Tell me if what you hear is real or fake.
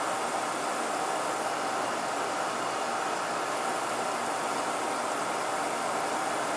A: real